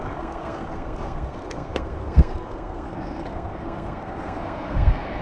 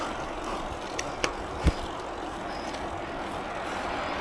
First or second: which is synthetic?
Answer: first